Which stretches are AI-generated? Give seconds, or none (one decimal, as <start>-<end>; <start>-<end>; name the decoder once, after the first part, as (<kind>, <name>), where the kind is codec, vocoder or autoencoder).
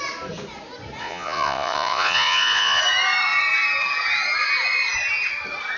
1.0-2.8 (vocoder, Vocos)